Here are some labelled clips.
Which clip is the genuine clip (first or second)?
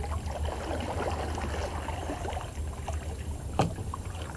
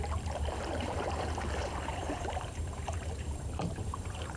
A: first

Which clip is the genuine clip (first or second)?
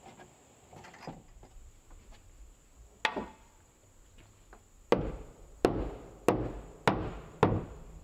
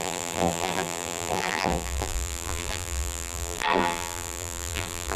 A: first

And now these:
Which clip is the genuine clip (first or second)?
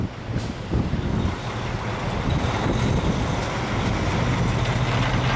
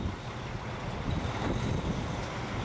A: first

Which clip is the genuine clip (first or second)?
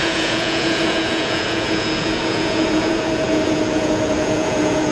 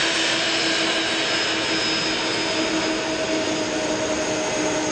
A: second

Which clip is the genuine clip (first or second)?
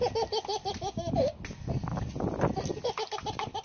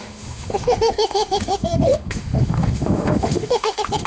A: first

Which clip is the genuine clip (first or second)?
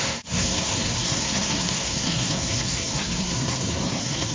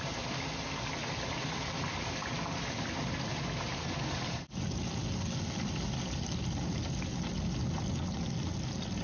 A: second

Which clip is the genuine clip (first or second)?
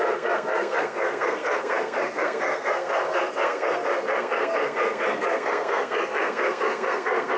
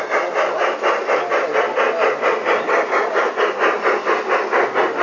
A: second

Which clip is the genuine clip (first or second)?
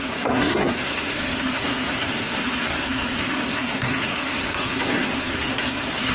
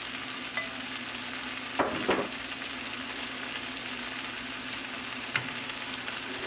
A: second